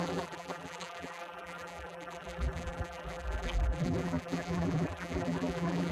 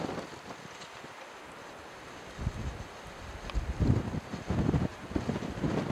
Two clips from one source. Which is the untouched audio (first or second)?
second